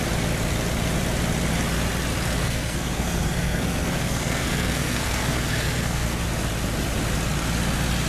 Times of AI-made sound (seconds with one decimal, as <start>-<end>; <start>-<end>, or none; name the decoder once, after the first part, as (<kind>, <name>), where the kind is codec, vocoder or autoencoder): 2.4-6.2 (codec, SNAC)

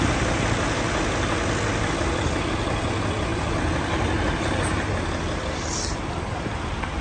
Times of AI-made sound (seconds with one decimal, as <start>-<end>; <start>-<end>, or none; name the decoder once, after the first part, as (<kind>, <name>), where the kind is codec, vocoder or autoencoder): none